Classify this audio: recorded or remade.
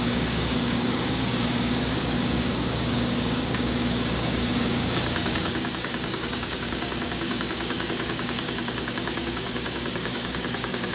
remade